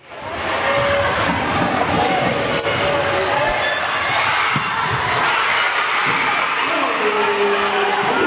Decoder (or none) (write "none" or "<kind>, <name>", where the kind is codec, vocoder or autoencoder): none